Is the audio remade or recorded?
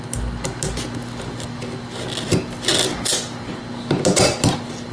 recorded